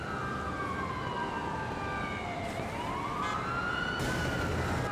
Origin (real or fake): real